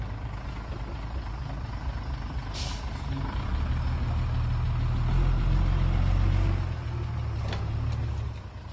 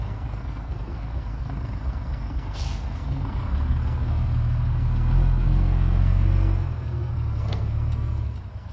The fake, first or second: second